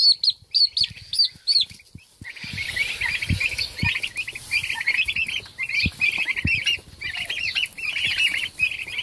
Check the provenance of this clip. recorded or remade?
recorded